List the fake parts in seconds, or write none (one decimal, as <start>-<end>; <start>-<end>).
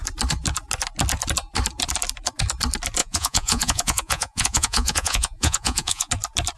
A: 3.0-6.1